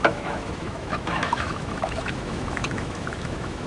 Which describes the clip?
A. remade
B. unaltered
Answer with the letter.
A